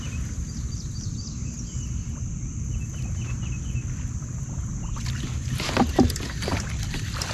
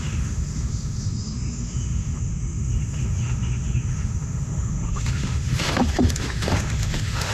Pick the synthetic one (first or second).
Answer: second